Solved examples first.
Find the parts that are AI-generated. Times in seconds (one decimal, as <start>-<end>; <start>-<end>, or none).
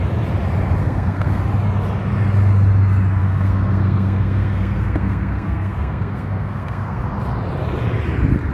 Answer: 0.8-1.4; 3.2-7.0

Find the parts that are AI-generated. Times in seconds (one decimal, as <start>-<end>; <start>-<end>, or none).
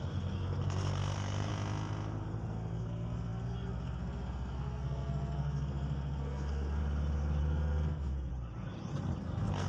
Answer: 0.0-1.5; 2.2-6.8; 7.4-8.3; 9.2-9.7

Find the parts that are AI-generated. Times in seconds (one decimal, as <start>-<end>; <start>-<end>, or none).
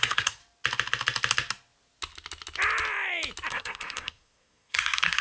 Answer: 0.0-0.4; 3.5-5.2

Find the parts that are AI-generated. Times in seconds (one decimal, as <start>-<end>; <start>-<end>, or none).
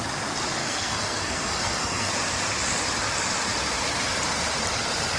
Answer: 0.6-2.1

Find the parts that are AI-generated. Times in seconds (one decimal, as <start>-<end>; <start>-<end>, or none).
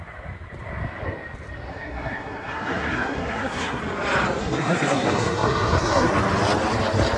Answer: 1.7-3.8; 4.4-6.1